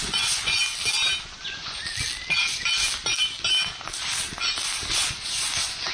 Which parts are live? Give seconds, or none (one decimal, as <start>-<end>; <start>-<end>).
0.6-1.2; 1.8-5.1

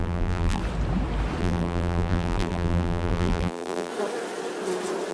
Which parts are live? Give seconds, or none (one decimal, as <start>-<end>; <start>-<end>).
0.6-1.4; 3.9-5.1

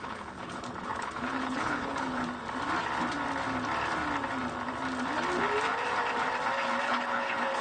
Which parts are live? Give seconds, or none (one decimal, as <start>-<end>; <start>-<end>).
2.2-6.8